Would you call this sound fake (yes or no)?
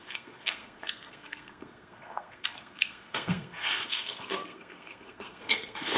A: yes